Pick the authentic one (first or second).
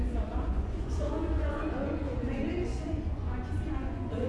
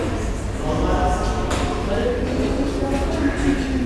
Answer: second